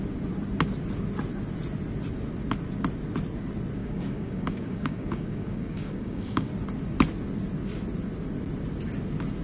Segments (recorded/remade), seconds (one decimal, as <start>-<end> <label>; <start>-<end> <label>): 0.0-3.8 recorded; 3.8-6.5 remade; 6.5-9.4 recorded